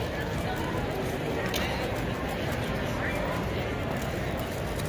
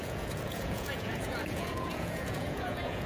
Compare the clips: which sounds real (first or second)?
first